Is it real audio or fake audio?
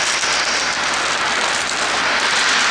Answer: real